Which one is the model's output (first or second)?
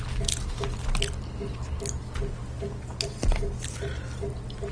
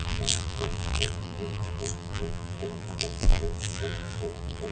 second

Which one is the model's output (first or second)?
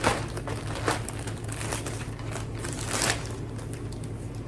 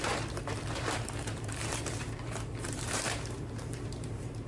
second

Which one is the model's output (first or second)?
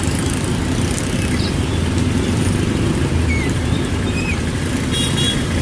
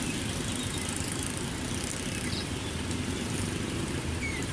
second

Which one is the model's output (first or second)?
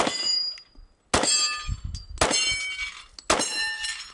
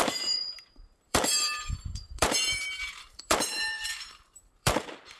second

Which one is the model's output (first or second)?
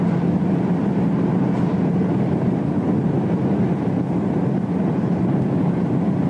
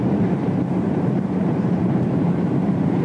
second